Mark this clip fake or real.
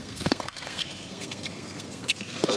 fake